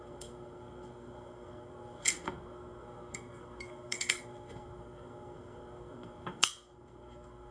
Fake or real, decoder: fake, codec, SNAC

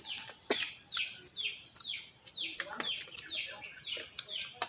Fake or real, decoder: real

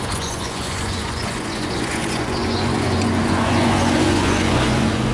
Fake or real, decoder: fake, vocoder, Vocos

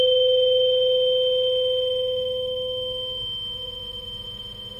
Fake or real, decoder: fake, autoencoder, DAC-VAE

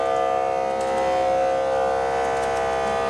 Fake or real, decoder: real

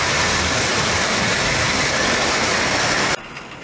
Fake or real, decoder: real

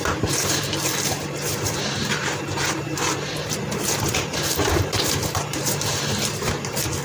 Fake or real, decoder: fake, vocoder, BigVGAN v2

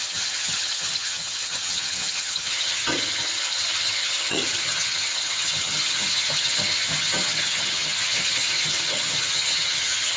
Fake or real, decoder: fake, vocoder, HiFi-GAN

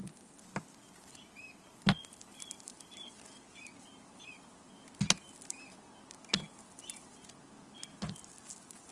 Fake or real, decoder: real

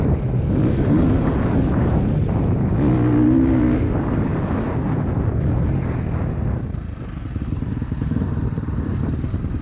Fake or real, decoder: real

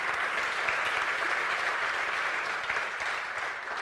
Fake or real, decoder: real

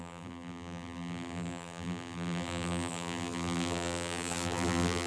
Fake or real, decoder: fake, vocoder, BigVGAN v2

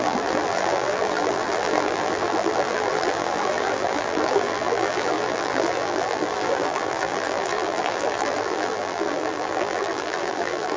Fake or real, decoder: fake, vocoder, BigVGAN v2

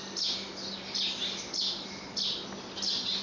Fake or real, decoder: real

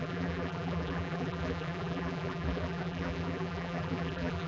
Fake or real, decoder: fake, vocoder, BigVGAN v2